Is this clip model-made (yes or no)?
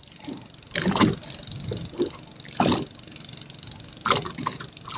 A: no